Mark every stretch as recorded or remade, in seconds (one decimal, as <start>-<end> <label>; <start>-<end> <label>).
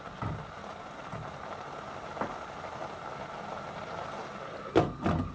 0.0-5.3 recorded